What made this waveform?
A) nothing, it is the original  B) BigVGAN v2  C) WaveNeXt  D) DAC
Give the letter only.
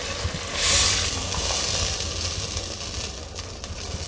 A